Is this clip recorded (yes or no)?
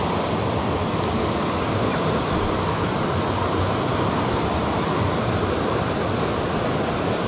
yes